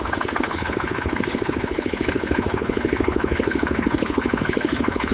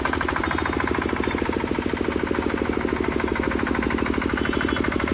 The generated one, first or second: first